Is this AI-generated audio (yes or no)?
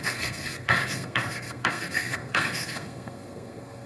yes